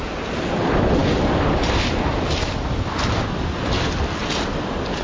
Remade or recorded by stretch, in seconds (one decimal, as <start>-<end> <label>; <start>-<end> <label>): 0.0-1.0 recorded; 1.0-3.2 remade; 3.2-5.0 recorded